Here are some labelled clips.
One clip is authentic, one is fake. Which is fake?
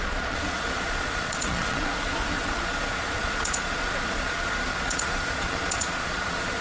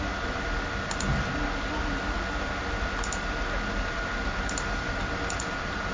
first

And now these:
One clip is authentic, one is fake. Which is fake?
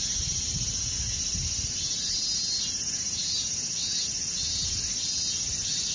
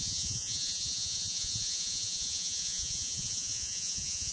second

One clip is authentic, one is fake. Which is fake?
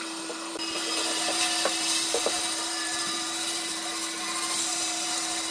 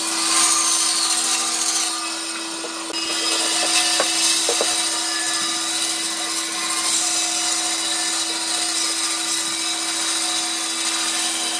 first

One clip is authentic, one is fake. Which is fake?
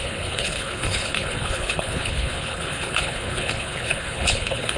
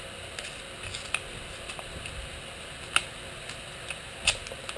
first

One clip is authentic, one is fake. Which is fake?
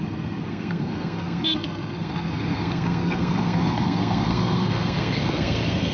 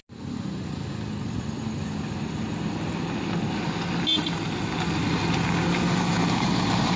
first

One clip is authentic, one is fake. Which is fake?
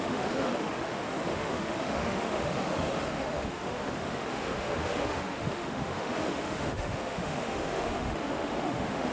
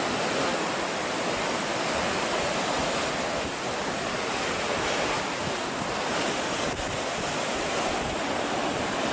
first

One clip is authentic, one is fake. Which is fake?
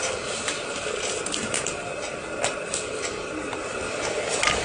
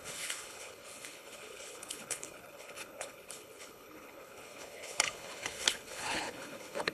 second